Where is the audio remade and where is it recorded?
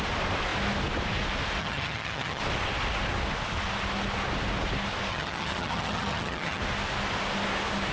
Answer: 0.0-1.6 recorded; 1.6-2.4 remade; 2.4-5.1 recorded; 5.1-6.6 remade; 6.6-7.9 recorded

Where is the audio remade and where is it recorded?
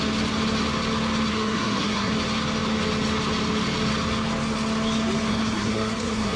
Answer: 0.0-1.3 recorded; 1.3-2.1 remade; 2.1-5.3 recorded; 5.3-6.4 remade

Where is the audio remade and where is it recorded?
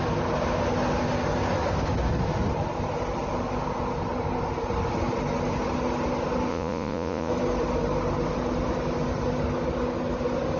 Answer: 0.0-6.5 recorded; 6.5-7.3 remade; 7.3-10.6 recorded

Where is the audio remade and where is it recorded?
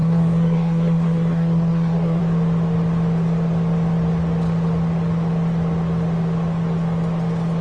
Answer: 0.0-2.2 remade; 2.2-7.6 recorded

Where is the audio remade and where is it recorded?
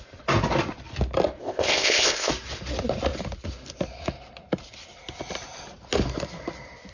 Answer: 0.0-1.4 recorded; 1.4-2.3 remade; 2.3-6.9 recorded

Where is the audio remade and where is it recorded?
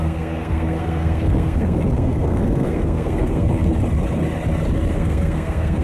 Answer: 0.0-3.7 remade; 3.7-4.9 recorded; 4.9-5.8 remade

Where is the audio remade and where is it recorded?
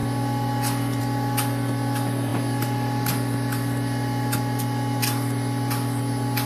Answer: 0.0-6.5 recorded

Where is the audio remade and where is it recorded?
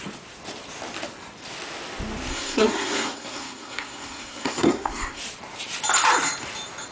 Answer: 0.0-2.3 recorded; 2.3-5.2 remade; 5.2-6.9 recorded